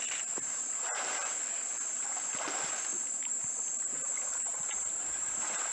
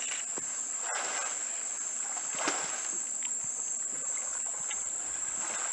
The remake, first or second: first